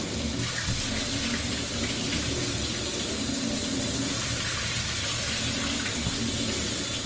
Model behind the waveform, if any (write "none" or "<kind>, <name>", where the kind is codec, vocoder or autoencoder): none